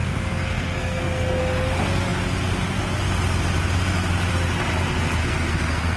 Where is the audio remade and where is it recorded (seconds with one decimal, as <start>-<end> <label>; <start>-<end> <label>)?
0.0-1.4 remade; 1.4-5.2 recorded; 5.2-6.0 remade